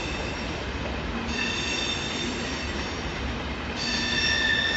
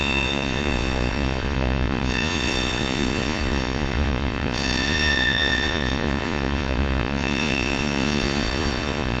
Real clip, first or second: first